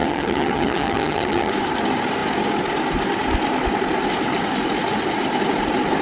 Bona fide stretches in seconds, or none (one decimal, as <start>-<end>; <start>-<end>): 1.5-6.0